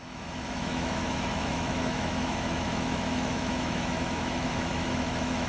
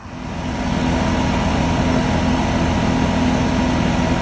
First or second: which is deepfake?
first